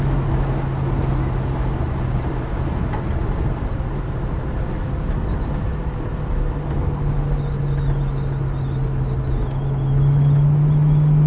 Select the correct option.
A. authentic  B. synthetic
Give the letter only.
A